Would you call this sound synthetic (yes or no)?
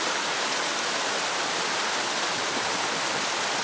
no